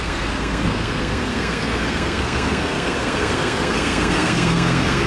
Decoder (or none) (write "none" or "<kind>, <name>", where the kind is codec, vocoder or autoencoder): codec, SNAC